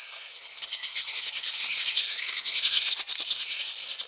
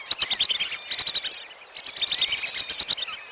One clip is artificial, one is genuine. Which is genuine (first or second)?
second